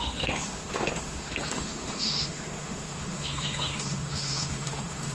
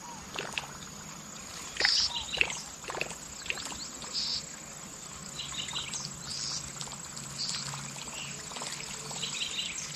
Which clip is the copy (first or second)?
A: first